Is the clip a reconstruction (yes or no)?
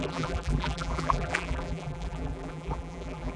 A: yes